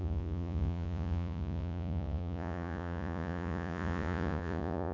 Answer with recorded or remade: remade